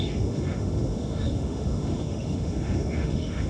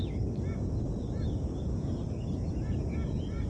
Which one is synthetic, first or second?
first